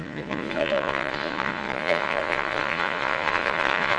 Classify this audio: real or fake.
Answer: fake